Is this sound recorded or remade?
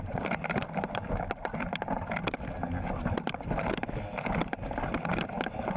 recorded